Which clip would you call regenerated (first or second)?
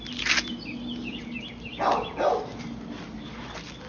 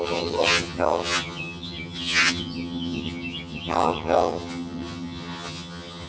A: second